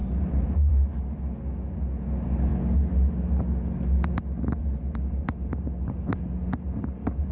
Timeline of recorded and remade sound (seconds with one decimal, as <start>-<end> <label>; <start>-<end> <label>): 0.0-0.7 remade; 0.7-7.3 recorded